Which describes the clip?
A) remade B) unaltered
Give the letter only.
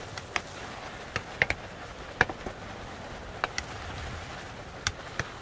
B